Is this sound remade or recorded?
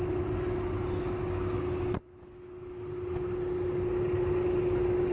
recorded